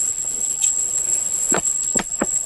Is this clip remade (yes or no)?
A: yes